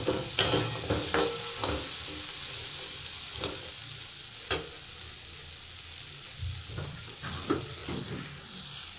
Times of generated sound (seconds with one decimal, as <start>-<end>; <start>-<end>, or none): none